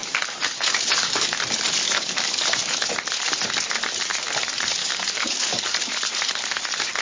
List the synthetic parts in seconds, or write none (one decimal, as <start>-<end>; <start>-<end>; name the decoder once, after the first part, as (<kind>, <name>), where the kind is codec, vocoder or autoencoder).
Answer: 0.0-1.4 (codec, DAC); 1.8-2.9; 4.8-5.6